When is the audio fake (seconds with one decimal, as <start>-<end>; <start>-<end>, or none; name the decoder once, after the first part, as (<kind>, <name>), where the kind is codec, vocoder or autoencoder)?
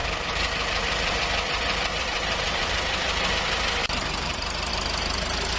0.0-3.3 (vocoder, BigVGAN v2); 3.8-4.7